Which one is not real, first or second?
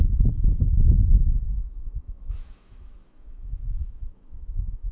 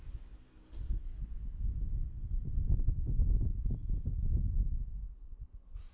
first